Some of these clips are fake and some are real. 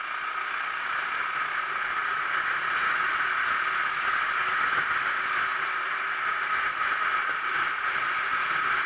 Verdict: real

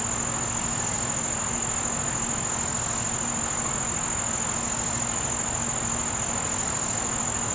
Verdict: real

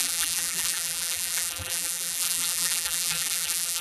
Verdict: fake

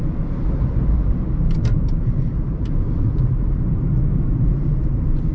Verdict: fake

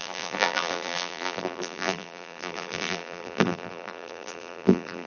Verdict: fake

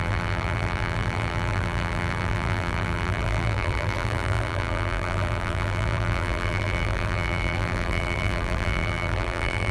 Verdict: fake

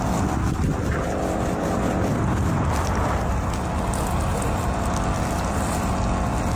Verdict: real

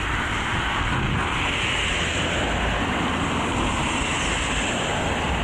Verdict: real